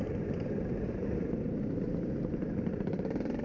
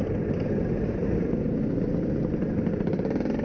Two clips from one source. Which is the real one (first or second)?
second